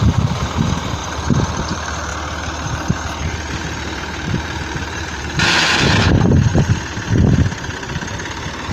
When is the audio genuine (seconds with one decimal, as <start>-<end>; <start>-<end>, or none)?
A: 2.1-3.3; 6.5-8.7